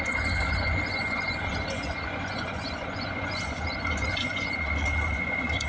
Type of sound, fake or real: fake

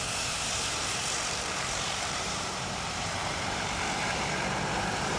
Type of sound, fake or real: fake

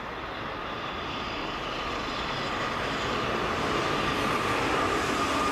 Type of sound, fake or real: real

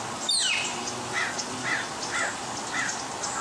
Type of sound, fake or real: real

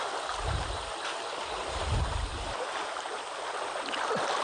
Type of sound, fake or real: real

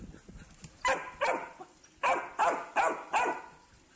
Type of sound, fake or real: real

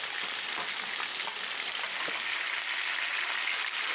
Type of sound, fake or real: real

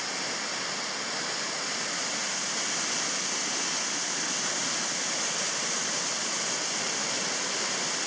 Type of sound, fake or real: real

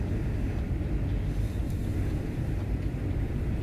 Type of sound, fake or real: real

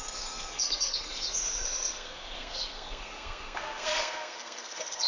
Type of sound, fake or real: fake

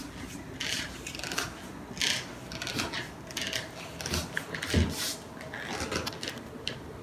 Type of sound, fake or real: real